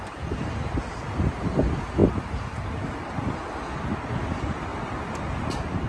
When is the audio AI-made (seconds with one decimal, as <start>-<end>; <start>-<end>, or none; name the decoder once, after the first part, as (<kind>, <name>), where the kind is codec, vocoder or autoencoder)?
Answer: none